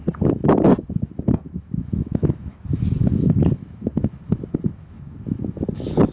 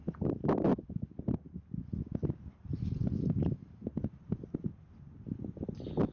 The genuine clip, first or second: second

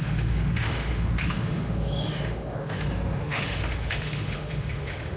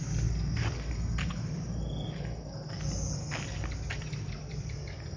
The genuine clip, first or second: second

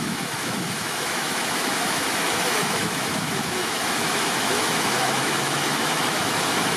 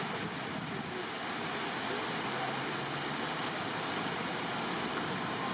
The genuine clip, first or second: second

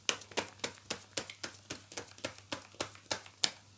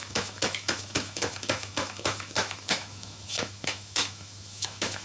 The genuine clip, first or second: first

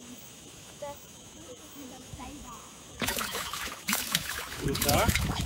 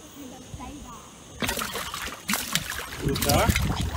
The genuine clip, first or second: second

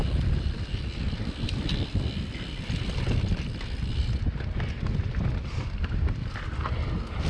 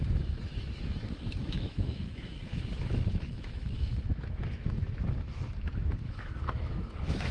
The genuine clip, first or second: first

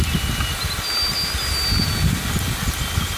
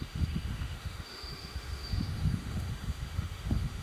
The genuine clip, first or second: first